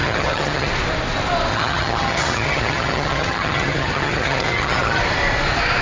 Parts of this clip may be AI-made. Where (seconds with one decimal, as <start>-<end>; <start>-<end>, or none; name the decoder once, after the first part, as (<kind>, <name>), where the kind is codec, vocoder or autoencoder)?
0.0-0.7 (vocoder, HiFi-GAN); 1.5-5.0